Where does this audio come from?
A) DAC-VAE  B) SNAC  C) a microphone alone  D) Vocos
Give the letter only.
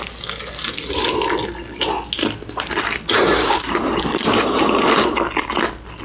C